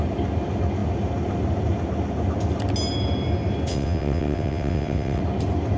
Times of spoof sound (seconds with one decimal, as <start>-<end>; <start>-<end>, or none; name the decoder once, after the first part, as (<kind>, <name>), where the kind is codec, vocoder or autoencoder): 3.7-5.2 (vocoder, WaveNeXt)